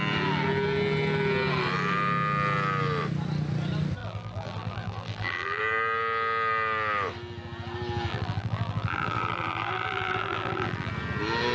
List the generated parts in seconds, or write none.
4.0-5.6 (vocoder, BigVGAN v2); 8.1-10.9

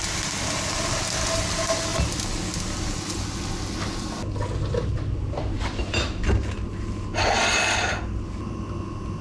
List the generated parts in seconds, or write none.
none

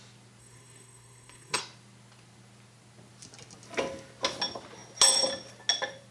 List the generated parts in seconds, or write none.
0.4-1.6 (codec, SNAC)

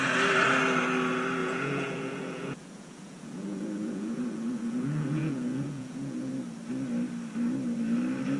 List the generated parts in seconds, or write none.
1.4-6.3 (vocoder, Vocos)

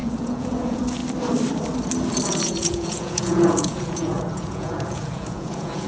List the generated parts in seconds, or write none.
0.0-1.0 (vocoder, Vocos); 2.3-5.9

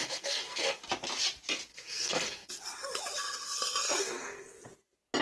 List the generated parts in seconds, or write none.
0.0-0.8 (codec, SNAC); 1.7-2.5; 4.0-4.6

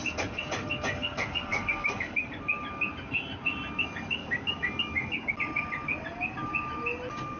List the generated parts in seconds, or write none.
1.5-2.3 (codec, DAC); 4.2-5.3